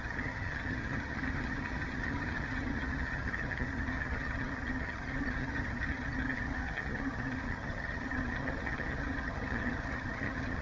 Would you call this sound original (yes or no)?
no